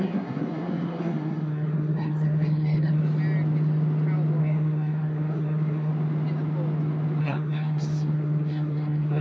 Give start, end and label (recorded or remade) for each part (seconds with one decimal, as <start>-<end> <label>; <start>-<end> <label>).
0.0-3.0 remade; 3.0-4.4 recorded; 4.4-5.9 remade; 5.9-7.2 recorded; 7.2-9.2 remade